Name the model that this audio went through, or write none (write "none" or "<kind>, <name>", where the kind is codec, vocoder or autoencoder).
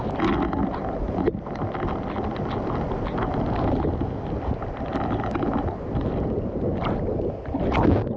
none